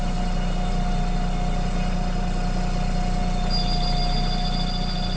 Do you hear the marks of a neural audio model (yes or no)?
no